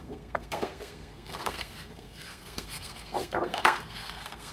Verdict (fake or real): fake